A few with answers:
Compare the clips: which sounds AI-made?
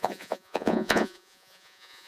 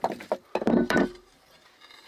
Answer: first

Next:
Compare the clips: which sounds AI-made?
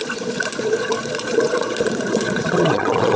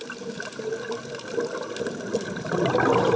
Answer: first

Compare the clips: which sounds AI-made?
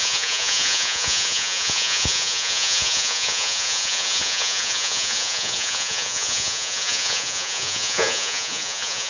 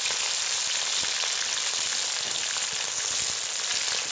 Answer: first